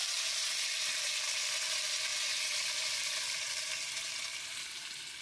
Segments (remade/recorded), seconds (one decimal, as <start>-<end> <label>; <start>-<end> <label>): 0.0-2.1 recorded; 2.1-3.6 remade; 3.6-4.3 recorded; 4.3-5.2 remade